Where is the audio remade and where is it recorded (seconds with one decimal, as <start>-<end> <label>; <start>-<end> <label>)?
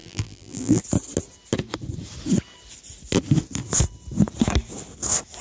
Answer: 0.0-0.8 remade; 0.8-5.4 recorded